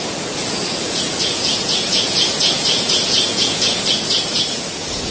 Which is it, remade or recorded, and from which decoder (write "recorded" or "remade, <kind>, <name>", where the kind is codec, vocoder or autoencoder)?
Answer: remade, vocoder, Vocos